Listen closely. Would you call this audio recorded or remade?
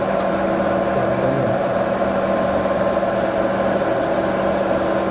recorded